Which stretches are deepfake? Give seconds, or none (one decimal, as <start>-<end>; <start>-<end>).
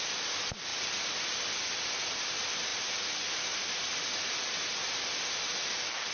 none